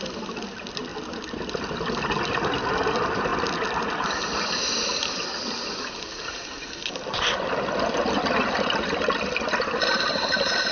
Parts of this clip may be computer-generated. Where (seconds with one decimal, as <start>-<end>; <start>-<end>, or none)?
none